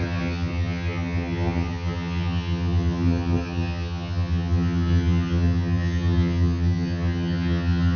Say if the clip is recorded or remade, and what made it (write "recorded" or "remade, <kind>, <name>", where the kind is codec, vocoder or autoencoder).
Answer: remade, vocoder, HiFi-GAN